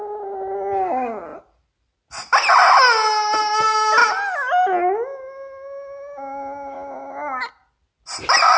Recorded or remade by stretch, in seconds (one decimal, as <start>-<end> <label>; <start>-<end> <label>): 0.0-8.6 recorded